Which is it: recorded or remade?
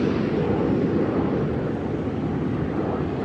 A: recorded